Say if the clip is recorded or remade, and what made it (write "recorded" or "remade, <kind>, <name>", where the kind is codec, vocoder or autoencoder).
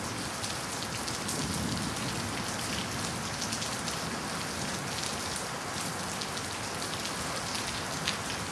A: recorded